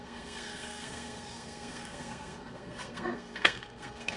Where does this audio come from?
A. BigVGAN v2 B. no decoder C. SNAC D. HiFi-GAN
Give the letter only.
C